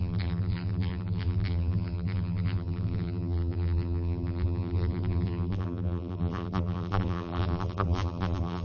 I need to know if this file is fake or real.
fake